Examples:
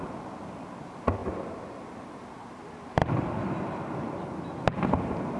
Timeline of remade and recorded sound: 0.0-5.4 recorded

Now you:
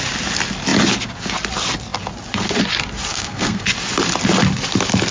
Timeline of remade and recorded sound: 0.0-3.1 recorded; 3.1-3.6 remade; 3.6-5.1 recorded

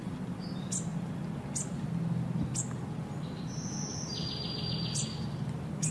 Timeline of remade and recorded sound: 0.0-5.9 recorded

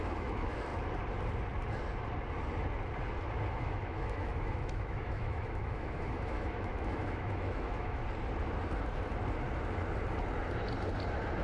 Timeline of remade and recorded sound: 0.0-0.7 remade; 0.7-3.5 recorded; 3.5-8.0 remade; 8.0-11.4 recorded

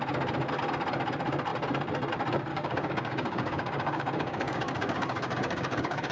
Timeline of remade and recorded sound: 0.0-2.5 recorded; 2.5-6.1 remade

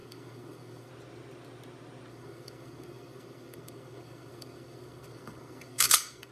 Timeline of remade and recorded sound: 0.0-0.9 remade; 0.9-2.1 recorded; 2.1-6.3 remade

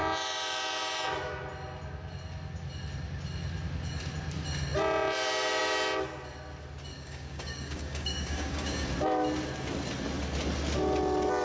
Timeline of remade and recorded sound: 0.0-6.9 recorded; 6.9-8.9 remade; 8.9-11.4 recorded